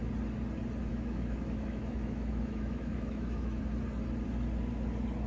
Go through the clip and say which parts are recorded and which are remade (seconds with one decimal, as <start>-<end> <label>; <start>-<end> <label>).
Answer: 0.0-0.9 recorded; 0.9-3.6 remade; 3.6-5.3 recorded